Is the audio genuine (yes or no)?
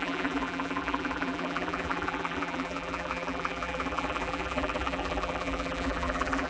no